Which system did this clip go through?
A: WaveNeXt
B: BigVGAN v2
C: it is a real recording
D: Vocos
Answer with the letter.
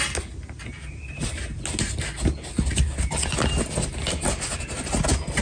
C